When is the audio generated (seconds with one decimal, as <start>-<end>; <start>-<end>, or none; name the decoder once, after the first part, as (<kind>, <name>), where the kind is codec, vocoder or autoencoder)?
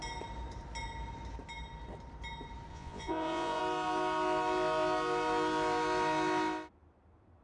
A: 2.7-3.6 (vocoder, Vocos)